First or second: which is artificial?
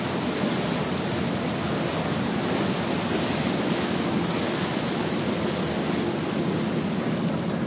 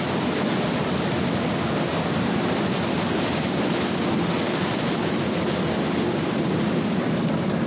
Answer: second